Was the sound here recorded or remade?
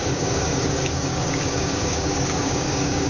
remade